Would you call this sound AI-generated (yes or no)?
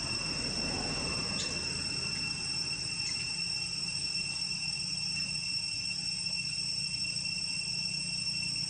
no